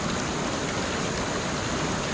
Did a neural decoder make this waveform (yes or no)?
no